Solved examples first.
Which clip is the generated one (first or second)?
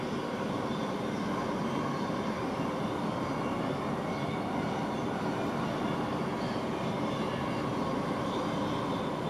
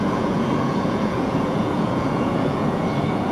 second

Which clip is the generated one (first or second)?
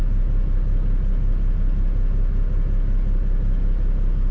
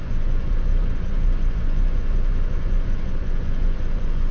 second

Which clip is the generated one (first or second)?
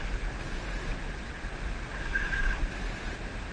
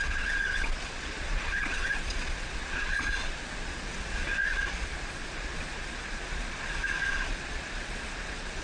second